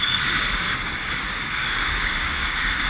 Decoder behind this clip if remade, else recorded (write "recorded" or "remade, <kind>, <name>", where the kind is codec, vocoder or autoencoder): remade, codec, DAC